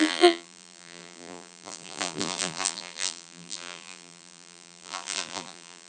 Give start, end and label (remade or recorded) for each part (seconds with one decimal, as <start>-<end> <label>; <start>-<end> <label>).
0.0-5.9 remade